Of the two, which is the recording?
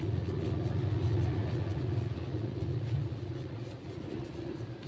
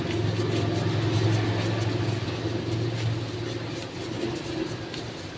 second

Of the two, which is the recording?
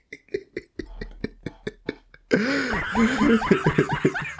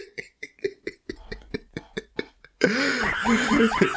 first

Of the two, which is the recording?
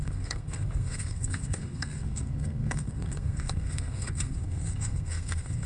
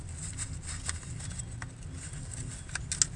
second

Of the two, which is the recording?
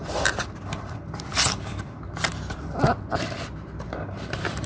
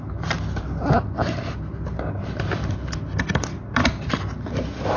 second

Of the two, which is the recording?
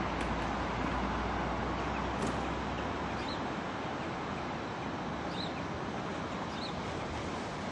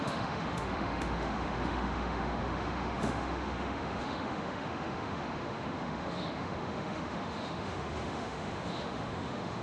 first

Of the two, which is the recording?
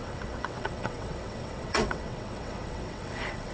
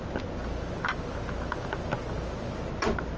second